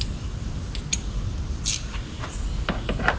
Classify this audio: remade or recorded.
recorded